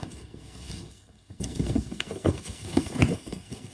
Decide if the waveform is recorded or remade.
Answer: remade